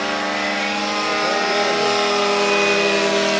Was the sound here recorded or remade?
recorded